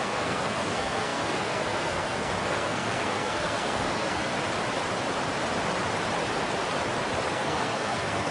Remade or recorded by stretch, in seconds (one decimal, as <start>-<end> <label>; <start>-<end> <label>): 0.0-4.3 remade; 4.3-7.3 recorded; 7.3-8.3 remade